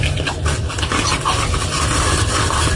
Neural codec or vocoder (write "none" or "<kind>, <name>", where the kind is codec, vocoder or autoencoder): none